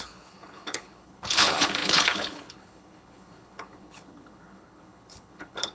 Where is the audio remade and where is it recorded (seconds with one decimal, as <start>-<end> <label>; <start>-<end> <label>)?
0.0-5.7 remade